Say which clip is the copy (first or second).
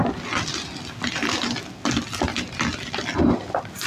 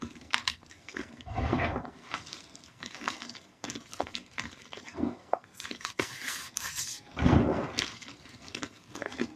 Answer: second